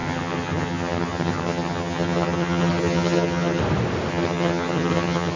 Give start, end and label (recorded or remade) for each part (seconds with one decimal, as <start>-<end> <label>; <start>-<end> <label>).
0.0-3.6 remade; 3.6-4.1 recorded; 4.1-5.4 remade